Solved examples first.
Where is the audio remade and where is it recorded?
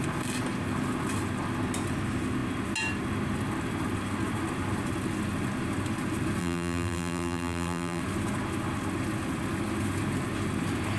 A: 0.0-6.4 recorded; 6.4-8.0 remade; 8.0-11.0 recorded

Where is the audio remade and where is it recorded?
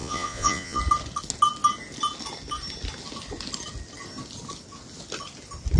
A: 0.0-0.8 remade; 0.8-5.8 recorded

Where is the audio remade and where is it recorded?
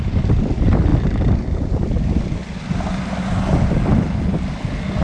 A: 0.0-5.0 recorded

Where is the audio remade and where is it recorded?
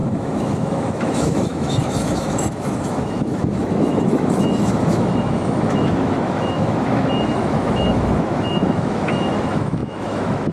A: 0.0-10.5 remade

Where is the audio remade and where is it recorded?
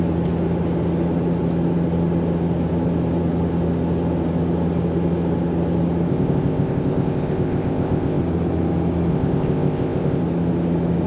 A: 0.0-6.1 recorded; 6.1-8.2 remade; 8.2-9.1 recorded; 9.1-10.2 remade; 10.2-11.1 recorded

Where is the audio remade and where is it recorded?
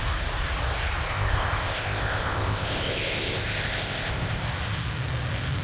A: 0.0-1.1 recorded; 1.1-4.4 remade; 4.4-5.6 recorded